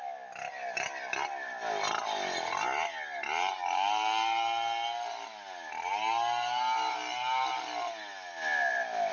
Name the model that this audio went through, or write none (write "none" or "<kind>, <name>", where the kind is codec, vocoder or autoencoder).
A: none